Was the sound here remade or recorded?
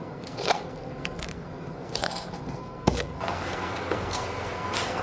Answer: remade